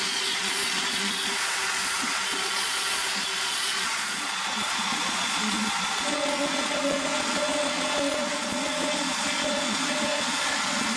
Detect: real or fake fake